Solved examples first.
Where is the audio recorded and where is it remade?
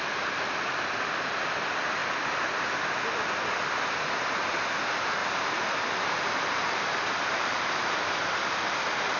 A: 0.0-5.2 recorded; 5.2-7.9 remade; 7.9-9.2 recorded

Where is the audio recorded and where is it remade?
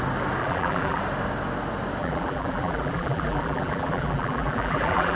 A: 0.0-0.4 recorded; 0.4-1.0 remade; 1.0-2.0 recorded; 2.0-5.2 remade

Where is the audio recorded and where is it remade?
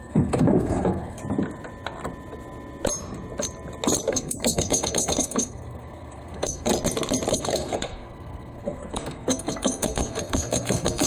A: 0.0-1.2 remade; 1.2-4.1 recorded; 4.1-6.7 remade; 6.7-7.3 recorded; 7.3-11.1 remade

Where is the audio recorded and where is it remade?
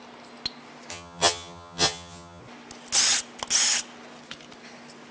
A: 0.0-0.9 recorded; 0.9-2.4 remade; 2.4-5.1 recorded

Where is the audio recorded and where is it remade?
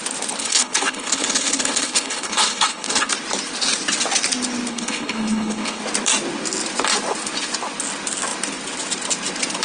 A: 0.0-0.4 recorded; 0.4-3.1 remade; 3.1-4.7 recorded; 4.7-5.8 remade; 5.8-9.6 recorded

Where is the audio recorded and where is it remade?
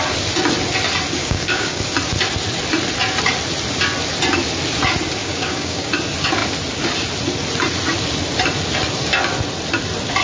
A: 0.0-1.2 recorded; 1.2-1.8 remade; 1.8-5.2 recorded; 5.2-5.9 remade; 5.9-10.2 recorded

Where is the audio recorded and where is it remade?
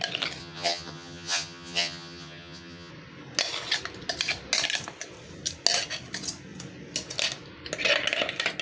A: 0.0-0.4 recorded; 0.4-2.9 remade; 2.9-8.6 recorded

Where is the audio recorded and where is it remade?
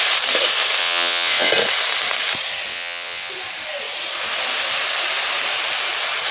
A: 0.0-0.8 recorded; 0.8-1.5 remade; 1.5-2.7 recorded; 2.7-3.3 remade; 3.3-6.3 recorded